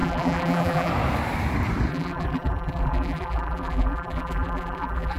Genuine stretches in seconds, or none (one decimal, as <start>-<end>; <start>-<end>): 0.9-1.9